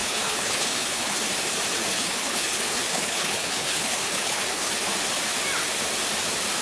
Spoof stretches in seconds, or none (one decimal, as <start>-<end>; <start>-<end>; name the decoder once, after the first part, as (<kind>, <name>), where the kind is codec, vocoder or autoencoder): 0.0-1.2 (codec, HILCodec); 1.9-4.7